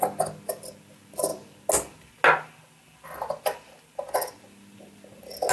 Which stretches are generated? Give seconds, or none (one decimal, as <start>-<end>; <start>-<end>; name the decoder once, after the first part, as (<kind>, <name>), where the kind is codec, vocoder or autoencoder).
none